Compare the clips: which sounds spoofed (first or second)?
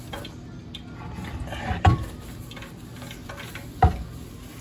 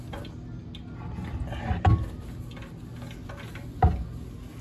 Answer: first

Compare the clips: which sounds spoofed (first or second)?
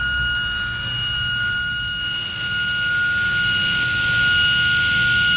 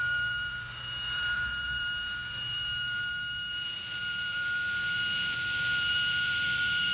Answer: second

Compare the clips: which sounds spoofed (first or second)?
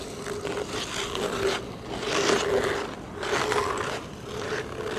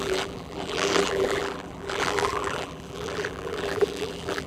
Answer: second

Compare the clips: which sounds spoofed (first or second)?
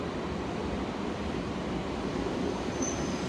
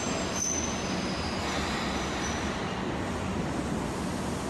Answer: first